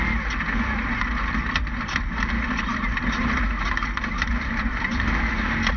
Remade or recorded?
recorded